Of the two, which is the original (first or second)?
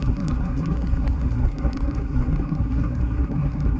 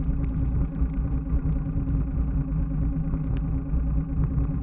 second